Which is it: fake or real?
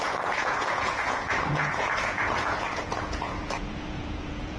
fake